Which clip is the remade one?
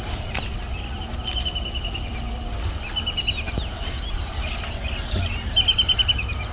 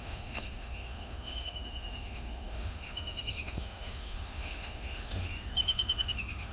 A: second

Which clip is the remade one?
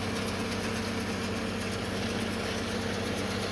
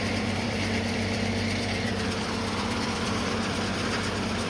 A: second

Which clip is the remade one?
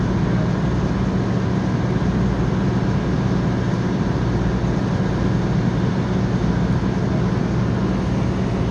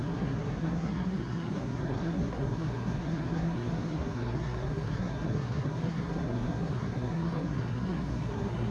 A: second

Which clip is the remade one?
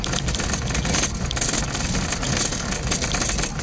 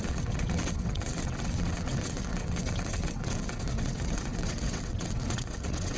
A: second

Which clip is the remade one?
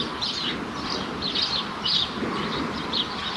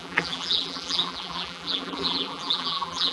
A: second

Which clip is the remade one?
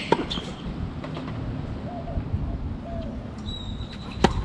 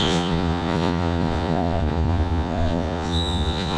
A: second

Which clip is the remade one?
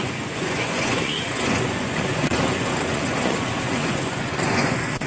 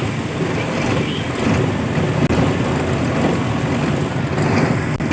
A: first